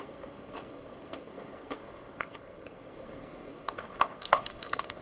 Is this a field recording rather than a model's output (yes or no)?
no